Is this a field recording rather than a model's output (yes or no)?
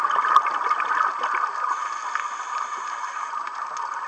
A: yes